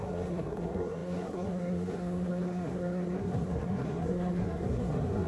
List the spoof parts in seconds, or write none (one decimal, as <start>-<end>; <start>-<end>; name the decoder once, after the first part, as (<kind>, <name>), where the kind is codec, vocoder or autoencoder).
0.0-5.3 (codec, SNAC)